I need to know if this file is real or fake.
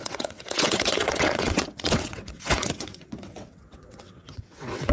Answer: fake